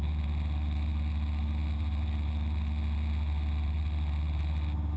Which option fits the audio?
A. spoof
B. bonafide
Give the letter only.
B